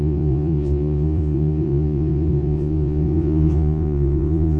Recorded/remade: remade